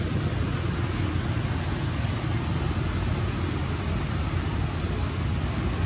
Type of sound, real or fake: real